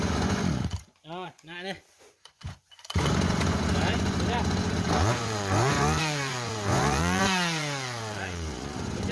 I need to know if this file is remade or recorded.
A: remade